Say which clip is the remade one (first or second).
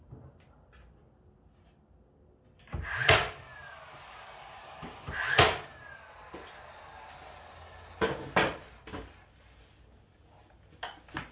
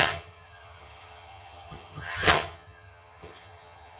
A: second